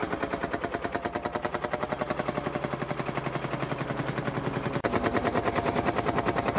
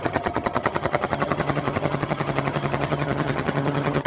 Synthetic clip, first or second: second